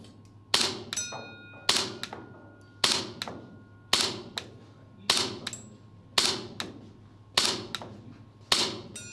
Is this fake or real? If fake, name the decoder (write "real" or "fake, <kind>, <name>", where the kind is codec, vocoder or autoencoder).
real